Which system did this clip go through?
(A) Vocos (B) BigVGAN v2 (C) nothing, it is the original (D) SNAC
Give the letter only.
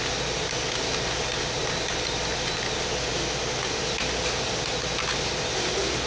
C